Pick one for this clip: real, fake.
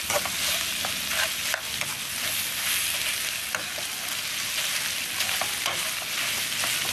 real